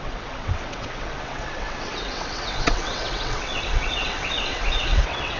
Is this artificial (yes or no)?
yes